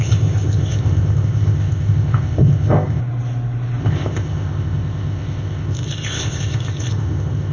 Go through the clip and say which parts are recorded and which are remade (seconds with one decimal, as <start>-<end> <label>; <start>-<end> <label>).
0.0-3.0 remade; 3.0-3.8 recorded; 3.8-7.5 remade